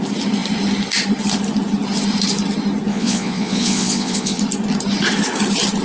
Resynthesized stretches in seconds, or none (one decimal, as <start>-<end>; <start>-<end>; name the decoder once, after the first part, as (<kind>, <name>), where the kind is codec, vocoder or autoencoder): 2.9-4.4 (vocoder, Vocos)